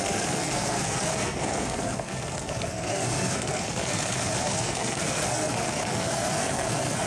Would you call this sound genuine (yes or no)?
no